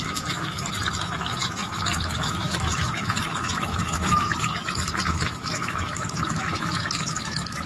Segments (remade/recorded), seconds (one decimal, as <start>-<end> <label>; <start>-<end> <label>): 0.0-7.7 remade

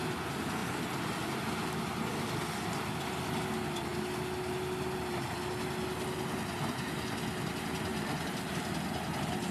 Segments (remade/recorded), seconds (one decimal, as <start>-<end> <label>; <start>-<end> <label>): 0.0-9.5 recorded

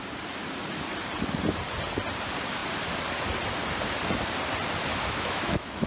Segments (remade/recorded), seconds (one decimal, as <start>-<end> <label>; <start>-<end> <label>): 0.0-4.9 recorded; 4.9-5.9 remade

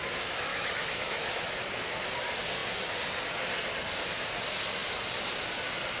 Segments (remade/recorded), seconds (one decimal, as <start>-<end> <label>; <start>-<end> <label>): 0.0-0.5 recorded; 0.5-1.5 remade; 1.5-6.0 recorded

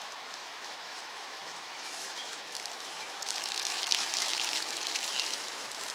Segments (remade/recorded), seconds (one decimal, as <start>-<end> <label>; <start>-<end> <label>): 0.0-5.9 remade